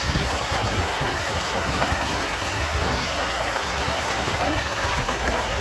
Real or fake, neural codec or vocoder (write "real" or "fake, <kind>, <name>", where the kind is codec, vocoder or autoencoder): fake, codec, SNAC